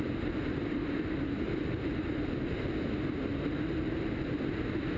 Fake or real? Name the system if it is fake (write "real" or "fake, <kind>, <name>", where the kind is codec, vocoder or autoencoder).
real